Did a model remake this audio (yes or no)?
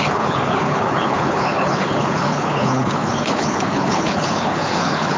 yes